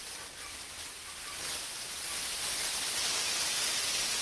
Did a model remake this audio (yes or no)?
no